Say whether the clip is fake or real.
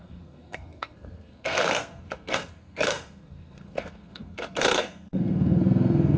fake